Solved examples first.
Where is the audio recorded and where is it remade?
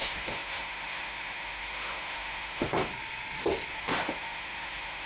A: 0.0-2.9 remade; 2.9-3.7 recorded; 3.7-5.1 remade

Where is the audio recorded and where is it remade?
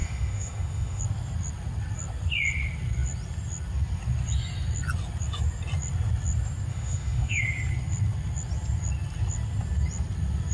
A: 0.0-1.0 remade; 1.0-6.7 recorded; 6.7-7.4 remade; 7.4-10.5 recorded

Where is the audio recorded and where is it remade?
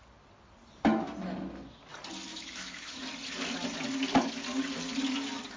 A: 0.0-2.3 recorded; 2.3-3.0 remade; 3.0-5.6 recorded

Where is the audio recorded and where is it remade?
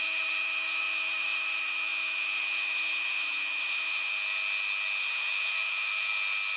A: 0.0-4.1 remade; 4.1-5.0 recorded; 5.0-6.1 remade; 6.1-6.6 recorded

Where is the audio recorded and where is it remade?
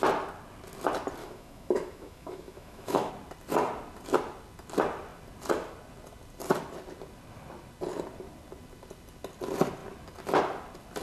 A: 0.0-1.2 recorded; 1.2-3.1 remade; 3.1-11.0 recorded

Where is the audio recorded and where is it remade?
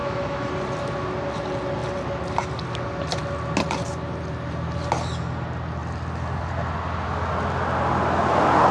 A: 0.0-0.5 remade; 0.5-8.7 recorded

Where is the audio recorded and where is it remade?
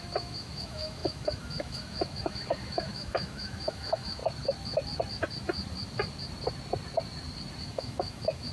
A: 0.0-4.2 remade; 4.2-7.6 recorded; 7.6-8.5 remade